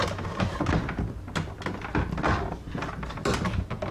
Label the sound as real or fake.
real